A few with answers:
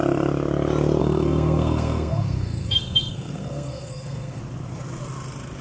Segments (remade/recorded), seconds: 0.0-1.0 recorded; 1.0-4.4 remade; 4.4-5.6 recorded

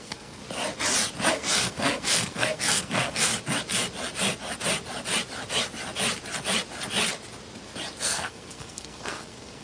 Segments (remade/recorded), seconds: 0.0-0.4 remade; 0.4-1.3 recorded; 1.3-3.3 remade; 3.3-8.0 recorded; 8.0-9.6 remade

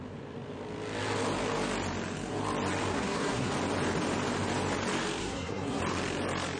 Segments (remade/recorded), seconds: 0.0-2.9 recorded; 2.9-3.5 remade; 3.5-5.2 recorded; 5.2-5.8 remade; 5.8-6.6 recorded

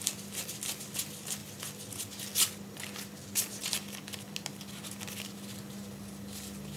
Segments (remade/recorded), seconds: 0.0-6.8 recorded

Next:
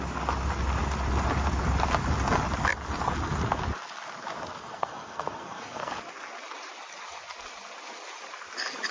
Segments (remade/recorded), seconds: 0.0-4.6 recorded; 4.6-5.9 remade; 5.9-8.9 recorded

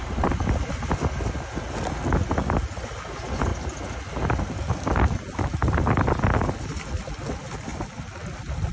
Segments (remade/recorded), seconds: 0.0-8.7 recorded

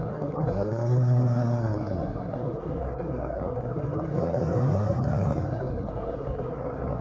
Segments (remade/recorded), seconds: 0.0-7.0 remade

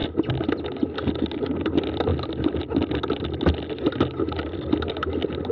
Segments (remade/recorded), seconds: 0.0-5.5 recorded